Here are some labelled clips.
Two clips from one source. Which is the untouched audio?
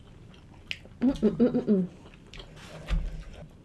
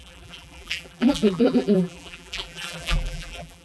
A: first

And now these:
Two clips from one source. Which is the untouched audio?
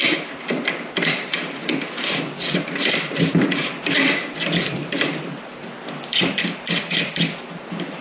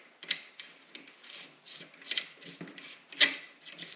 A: second